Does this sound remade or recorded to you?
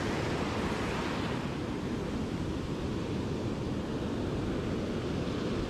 recorded